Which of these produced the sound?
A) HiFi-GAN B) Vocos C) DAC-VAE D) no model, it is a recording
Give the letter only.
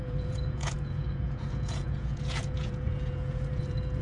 B